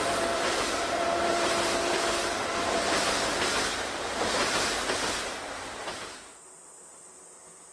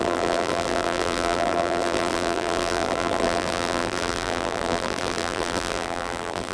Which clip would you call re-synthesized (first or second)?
second